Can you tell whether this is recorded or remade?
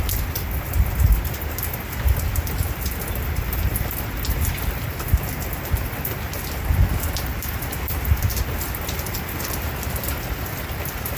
recorded